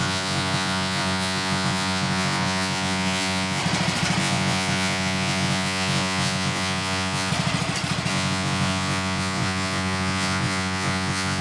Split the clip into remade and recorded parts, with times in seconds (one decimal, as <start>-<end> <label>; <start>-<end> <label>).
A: 0.0-3.6 remade; 3.6-4.2 recorded; 4.2-7.3 remade; 7.3-8.1 recorded; 8.1-11.4 remade